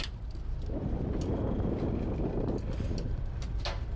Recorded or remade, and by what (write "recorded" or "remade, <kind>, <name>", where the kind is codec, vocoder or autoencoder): recorded